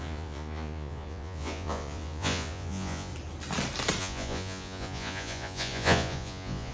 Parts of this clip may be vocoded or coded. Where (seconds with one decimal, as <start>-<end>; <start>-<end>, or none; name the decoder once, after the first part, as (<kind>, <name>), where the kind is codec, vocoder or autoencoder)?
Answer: 0.0-3.1 (vocoder, Vocos); 4.0-6.7